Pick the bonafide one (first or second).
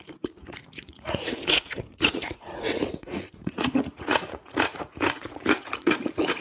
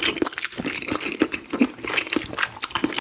second